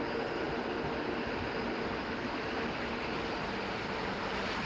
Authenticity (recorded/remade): recorded